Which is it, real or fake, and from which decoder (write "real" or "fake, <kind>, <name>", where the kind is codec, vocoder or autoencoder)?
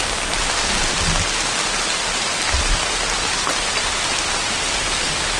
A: real